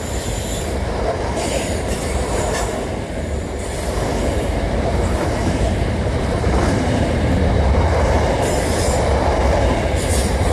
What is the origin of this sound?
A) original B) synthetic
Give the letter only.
B